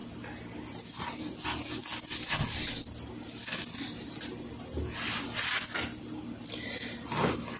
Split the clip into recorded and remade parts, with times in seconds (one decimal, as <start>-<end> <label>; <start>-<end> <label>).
0.0-7.6 recorded